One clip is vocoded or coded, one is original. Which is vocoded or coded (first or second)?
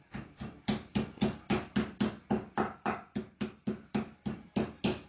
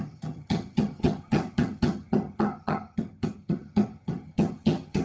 second